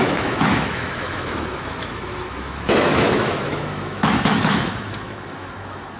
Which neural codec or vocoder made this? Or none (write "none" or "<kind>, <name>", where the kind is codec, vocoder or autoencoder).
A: autoencoder, DAC-VAE